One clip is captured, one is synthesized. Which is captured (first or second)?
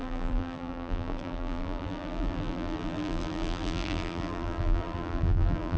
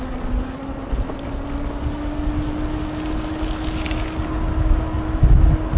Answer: second